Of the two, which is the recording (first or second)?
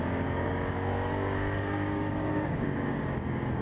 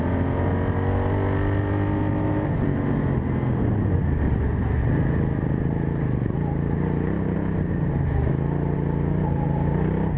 second